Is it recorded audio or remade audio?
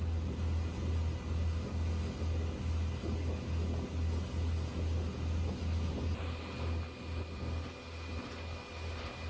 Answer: recorded